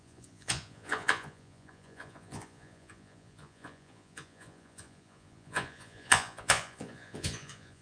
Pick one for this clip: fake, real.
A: fake